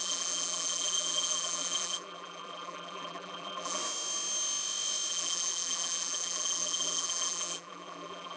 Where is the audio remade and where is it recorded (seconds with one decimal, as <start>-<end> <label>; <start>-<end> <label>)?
0.0-3.8 remade; 3.8-5.1 recorded; 5.1-8.4 remade